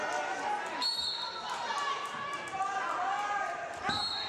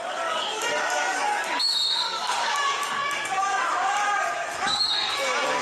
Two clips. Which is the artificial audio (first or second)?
second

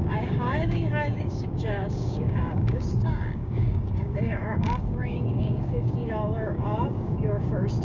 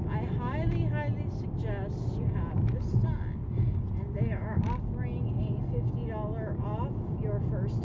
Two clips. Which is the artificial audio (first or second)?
first